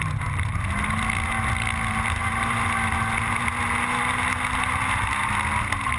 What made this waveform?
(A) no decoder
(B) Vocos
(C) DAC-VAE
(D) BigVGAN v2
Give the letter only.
A